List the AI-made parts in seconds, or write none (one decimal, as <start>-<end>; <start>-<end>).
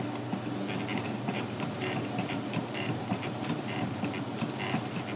0.9-4.0